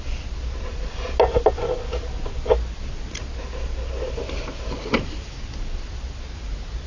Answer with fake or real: real